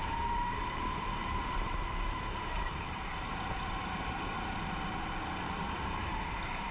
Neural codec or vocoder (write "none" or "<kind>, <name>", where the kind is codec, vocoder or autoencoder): vocoder, BigVGAN v2